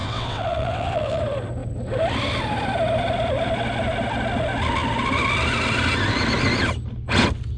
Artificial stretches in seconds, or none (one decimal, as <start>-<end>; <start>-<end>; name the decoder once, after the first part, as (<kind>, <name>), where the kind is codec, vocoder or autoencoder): 0.0-1.2 (vocoder, WaveNeXt)